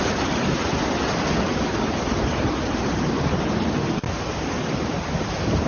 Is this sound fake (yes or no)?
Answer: no